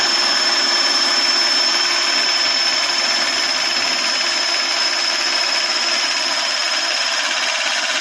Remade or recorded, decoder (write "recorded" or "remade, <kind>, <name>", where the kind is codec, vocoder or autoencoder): recorded